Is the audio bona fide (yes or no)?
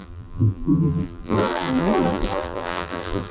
no